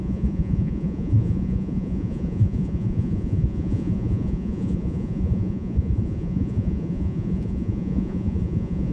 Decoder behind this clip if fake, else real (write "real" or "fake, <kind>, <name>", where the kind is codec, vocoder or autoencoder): fake, vocoder, Vocos